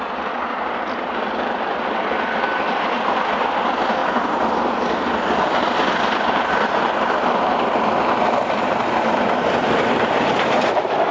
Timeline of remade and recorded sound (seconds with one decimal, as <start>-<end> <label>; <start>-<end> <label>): 0.0-11.1 remade